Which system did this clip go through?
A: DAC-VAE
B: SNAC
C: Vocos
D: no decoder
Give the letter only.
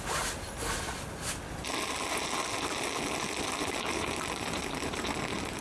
D